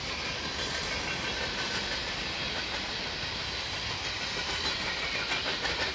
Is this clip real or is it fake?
real